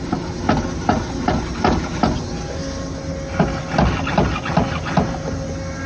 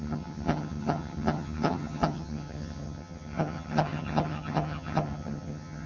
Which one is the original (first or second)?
first